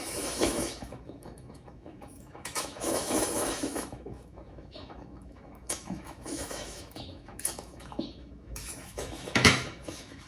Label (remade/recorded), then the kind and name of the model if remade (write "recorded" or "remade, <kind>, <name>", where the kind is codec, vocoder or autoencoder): remade, autoencoder, DAC-VAE